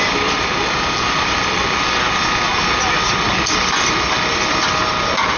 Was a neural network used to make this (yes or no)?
no